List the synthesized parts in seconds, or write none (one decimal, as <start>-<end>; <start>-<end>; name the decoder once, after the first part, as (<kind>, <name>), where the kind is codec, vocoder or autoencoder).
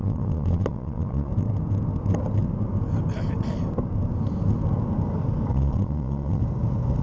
0.0-1.3 (vocoder, Vocos); 5.5-6.4